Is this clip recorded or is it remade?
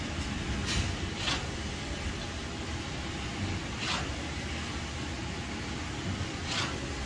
recorded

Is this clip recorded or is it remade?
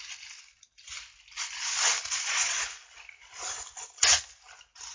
recorded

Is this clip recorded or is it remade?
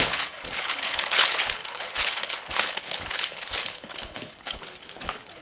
remade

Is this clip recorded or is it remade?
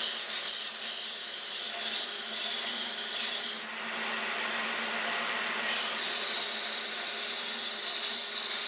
recorded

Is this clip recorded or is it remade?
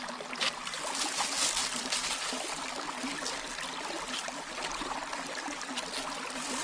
recorded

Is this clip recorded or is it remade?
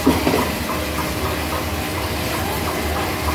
recorded